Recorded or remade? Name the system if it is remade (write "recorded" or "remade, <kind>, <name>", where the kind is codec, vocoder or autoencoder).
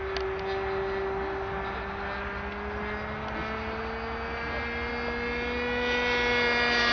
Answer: recorded